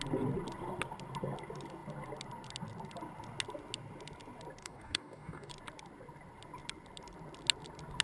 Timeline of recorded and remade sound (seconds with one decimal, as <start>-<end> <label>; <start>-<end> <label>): 0.0-4.6 recorded; 4.6-5.5 remade; 5.5-8.0 recorded